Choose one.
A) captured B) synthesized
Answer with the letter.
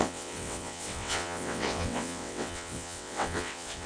B